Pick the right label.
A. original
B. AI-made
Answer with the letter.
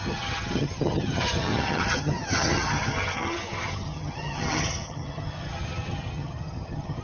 B